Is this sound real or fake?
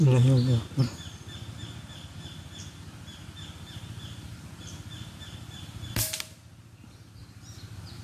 real